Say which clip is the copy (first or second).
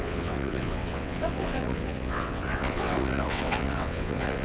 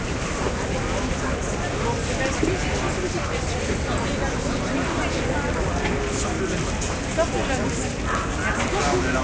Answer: first